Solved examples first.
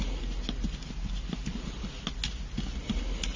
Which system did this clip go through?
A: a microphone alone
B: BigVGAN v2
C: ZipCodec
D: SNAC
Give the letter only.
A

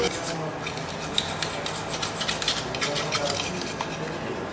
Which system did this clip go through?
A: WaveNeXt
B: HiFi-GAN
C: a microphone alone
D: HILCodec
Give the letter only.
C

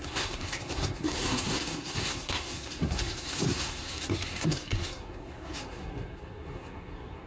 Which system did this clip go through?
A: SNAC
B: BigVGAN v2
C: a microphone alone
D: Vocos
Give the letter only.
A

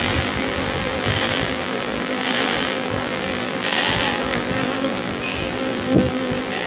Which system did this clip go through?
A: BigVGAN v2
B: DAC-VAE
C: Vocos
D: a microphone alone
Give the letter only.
A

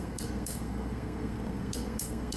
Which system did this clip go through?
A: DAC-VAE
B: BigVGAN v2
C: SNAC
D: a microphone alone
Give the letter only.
C